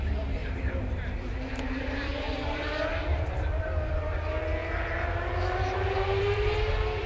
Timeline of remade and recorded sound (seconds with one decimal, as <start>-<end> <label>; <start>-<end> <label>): 0.0-0.4 recorded; 0.4-2.9 remade; 2.9-4.6 recorded; 4.6-6.2 remade; 6.2-7.1 recorded